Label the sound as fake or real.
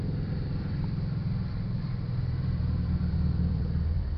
fake